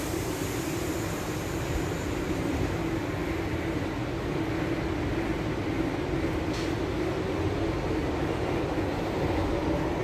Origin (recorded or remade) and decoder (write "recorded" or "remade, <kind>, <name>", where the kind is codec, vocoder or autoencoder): recorded